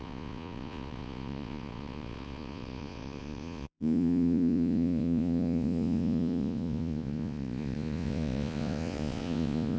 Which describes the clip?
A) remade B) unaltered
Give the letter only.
A